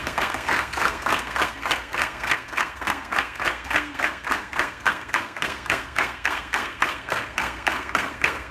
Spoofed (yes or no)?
yes